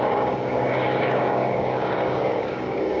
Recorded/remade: remade